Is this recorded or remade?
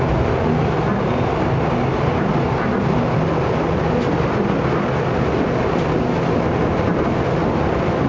recorded